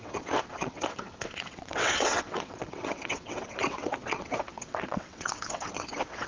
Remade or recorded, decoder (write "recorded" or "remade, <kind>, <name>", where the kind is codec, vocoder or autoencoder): remade, vocoder, WaveNeXt